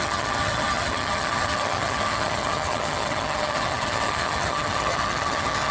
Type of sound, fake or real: fake